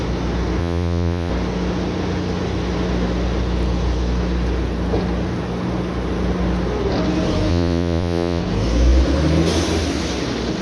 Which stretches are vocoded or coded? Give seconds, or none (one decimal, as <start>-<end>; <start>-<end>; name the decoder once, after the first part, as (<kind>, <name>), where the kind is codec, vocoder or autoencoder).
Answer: 0.6-1.3 (vocoder, Vocos); 7.5-8.4